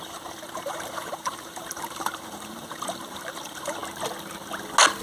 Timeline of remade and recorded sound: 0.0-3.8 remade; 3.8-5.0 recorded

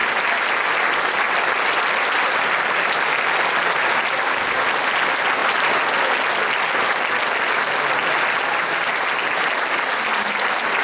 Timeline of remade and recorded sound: 0.0-10.8 recorded

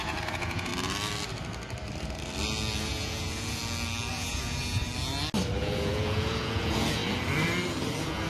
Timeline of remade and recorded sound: 0.0-0.7 remade; 0.7-2.8 recorded; 2.8-3.6 remade; 3.6-4.1 recorded; 4.1-4.9 remade; 4.9-5.6 recorded; 5.6-7.0 remade; 7.0-7.9 recorded; 7.9-8.3 remade

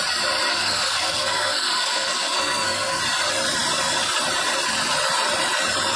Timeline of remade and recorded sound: 0.0-0.5 recorded; 0.5-3.0 remade; 3.0-6.0 recorded

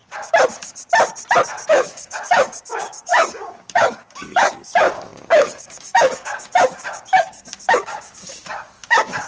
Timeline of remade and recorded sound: 0.0-1.7 recorded; 1.7-9.3 remade

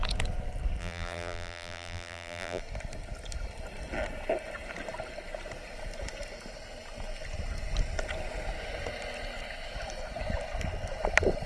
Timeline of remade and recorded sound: 0.0-0.8 recorded; 0.8-2.6 remade; 2.6-11.5 recorded

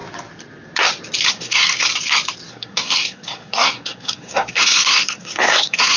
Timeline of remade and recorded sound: 0.0-1.3 recorded; 1.3-1.9 remade; 1.9-2.5 recorded; 2.5-6.0 remade